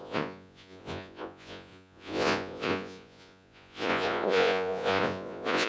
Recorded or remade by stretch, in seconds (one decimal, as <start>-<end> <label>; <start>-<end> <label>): 0.0-5.7 remade